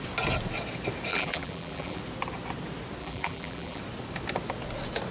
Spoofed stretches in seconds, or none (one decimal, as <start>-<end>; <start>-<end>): 1.1-2.0; 3.0-3.8